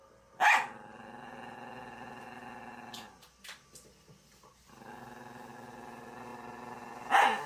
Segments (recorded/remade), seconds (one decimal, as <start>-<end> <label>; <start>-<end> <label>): 0.0-7.5 recorded